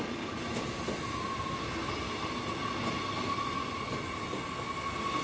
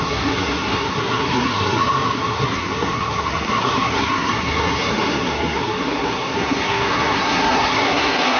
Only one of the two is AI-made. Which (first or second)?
second